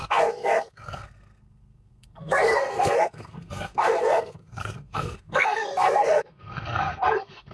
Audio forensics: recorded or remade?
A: remade